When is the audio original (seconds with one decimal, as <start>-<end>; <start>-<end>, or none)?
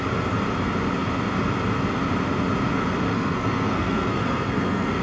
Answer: 0.0-3.1